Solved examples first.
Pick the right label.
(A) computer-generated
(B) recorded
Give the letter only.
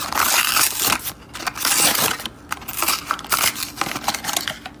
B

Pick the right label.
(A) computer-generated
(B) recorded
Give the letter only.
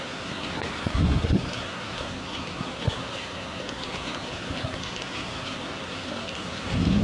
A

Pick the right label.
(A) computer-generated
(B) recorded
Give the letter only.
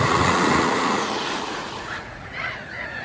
A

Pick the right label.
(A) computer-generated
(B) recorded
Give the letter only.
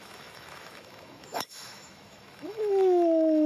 A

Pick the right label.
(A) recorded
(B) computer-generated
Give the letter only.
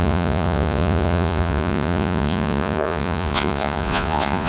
B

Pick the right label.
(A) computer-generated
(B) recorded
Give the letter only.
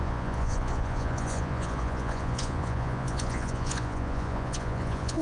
A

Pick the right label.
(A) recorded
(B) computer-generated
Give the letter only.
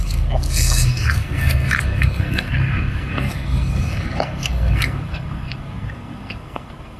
B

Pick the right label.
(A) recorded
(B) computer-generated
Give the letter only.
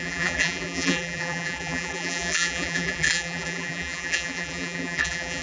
B